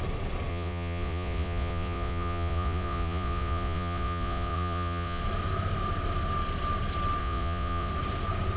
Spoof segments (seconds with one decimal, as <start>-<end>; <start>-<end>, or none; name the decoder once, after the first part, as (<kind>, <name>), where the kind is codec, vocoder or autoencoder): 0.5-5.2 (vocoder, Vocos); 7.2-7.9